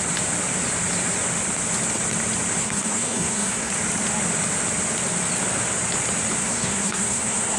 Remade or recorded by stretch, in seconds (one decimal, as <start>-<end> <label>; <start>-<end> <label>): 0.0-2.6 recorded; 2.6-3.7 remade; 3.7-6.4 recorded; 6.4-7.6 remade